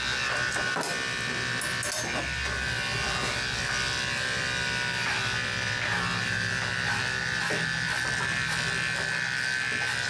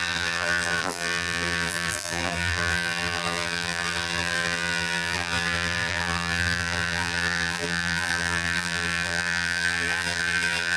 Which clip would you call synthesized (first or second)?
second